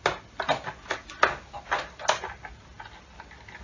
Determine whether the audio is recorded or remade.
recorded